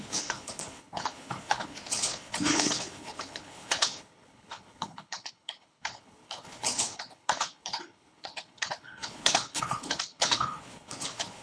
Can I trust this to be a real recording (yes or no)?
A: no